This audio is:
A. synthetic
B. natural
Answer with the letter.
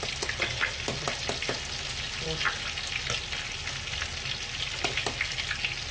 B